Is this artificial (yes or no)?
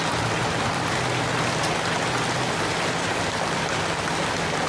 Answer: no